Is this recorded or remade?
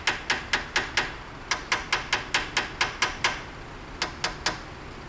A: recorded